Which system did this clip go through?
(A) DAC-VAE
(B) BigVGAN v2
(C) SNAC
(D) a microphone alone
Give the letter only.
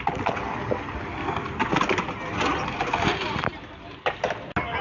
D